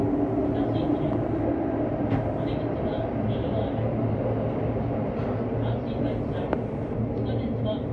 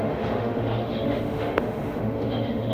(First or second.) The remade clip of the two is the second